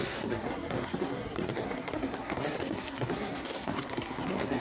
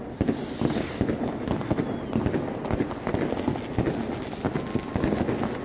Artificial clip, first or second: first